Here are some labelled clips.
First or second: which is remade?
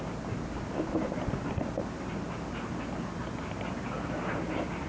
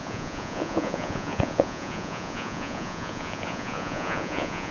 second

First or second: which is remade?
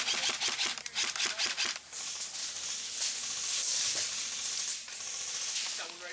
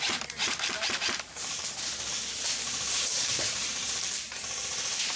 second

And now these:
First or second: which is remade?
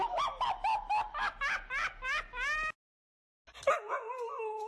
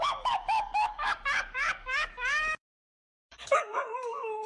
second